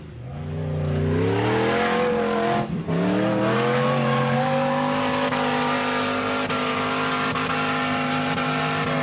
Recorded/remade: recorded